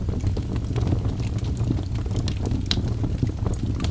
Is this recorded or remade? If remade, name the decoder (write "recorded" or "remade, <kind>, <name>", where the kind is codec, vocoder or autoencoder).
recorded